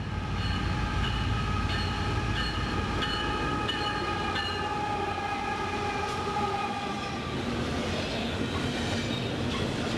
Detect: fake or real real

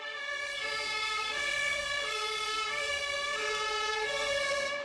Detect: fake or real fake